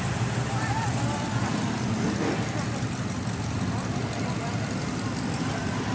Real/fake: fake